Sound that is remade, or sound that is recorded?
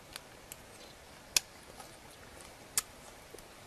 recorded